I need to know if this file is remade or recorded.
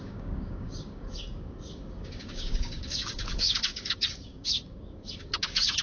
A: remade